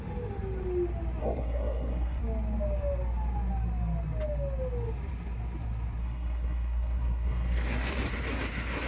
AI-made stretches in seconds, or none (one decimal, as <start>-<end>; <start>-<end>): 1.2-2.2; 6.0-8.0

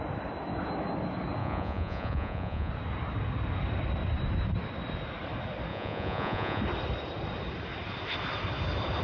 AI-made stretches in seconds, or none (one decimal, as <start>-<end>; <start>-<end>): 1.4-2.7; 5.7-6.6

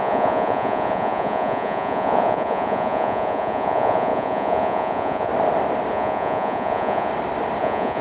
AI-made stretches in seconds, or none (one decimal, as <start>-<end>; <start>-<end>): 0.0-5.3; 5.9-7.1; 7.6-8.0

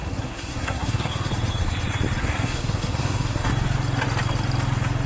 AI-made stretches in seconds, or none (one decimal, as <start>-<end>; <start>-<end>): 0.0-1.3; 2.2-3.5

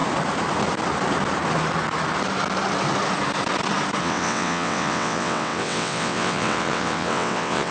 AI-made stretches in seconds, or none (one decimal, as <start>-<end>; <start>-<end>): 4.0-7.7